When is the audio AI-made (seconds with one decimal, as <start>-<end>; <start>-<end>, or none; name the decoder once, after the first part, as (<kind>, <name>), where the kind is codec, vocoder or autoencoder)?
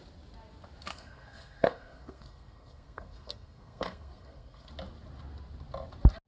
0.9-4.7 (codec, SNAC)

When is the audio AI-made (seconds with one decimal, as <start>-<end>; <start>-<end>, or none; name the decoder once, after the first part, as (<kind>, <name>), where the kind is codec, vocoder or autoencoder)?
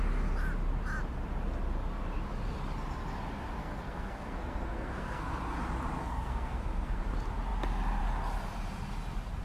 3.6-5.3 (codec, SNAC); 6.0-7.0